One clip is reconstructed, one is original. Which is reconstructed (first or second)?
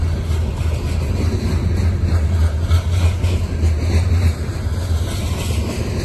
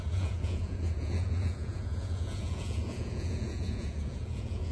second